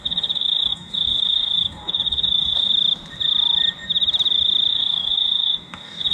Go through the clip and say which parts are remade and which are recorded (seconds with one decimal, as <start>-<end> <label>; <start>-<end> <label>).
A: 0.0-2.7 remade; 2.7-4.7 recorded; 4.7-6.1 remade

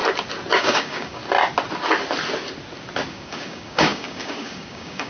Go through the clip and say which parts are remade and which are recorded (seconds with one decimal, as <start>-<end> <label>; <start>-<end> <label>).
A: 0.0-0.5 recorded; 0.5-1.2 remade; 1.2-3.1 recorded; 3.1-5.1 remade

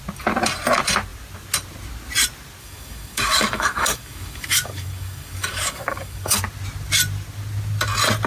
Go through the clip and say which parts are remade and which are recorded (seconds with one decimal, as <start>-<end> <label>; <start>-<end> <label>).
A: 0.0-2.6 recorded; 2.6-6.4 remade; 6.4-8.3 recorded

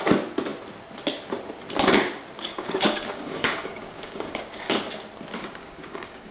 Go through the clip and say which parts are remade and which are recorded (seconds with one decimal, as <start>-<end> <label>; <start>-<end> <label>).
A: 0.0-2.5 recorded; 2.5-4.7 remade; 4.7-5.4 recorded; 5.4-6.3 remade

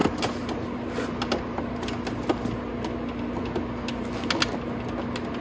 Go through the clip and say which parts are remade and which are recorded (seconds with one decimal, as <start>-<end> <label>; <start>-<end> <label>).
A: 0.0-5.4 recorded